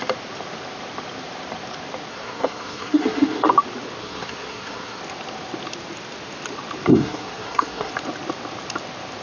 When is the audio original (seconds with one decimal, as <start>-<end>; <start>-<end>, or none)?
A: 0.0-2.1; 3.5-4.0; 5.0-6.9; 7.9-9.2